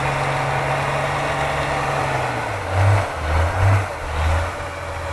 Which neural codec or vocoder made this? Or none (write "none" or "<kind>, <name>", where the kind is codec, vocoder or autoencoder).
none